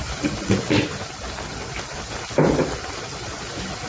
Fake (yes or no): no